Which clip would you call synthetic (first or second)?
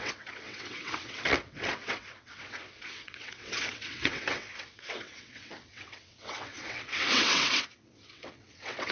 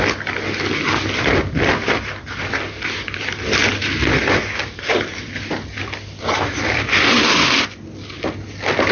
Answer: first